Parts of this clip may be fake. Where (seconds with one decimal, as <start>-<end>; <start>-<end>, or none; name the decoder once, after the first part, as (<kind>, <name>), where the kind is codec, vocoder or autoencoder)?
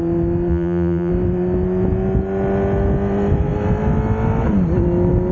0.5-1.1 (vocoder, BigVGAN v2)